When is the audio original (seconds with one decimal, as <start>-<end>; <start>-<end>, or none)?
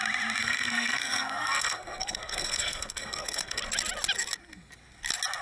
0.0-0.4; 3.6-5.4